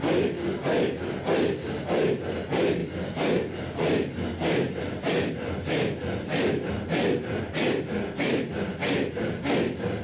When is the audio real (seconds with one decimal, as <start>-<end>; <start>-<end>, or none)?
0.0-10.0